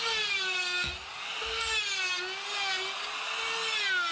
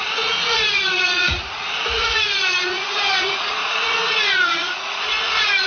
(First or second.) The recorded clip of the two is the first